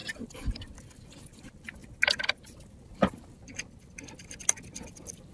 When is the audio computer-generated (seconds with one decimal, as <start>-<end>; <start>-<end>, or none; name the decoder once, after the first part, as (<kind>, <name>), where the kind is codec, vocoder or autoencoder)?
0.0-0.6 (vocoder, BigVGAN v2)